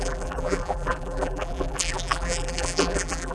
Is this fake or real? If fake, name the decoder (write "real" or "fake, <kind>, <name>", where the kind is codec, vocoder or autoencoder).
fake, vocoder, BigVGAN v2